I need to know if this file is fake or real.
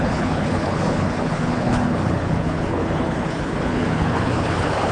fake